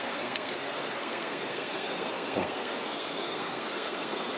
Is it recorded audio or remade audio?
remade